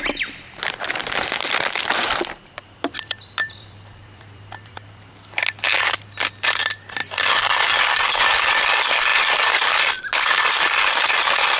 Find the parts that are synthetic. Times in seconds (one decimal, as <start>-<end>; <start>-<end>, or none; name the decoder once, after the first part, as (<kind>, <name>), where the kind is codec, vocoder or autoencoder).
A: 2.6-5.1 (vocoder, BigVGAN v2); 7.0-8.5